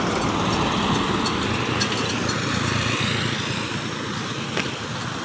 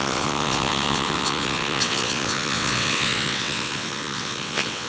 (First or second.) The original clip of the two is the first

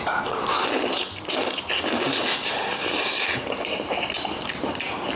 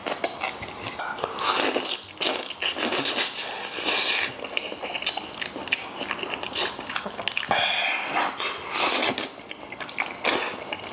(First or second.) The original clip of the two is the second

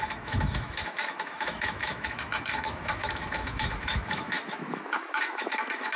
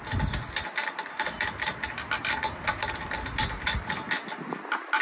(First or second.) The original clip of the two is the second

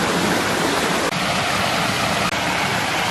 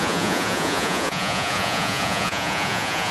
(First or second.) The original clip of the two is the first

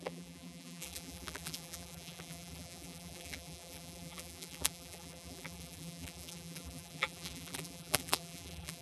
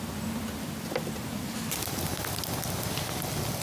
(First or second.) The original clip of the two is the second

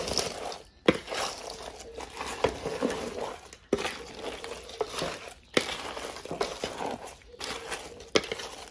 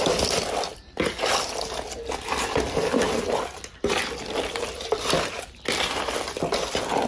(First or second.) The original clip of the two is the first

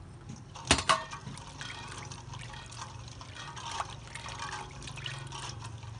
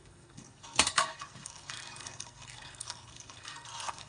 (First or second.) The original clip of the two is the first